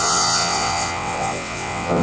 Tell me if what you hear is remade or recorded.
remade